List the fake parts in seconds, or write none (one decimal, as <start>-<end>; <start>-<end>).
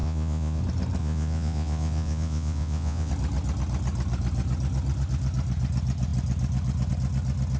0.0-0.6; 1.0-3.1